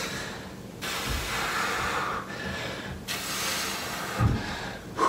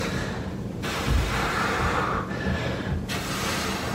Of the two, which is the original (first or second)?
first